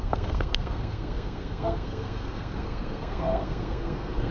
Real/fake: fake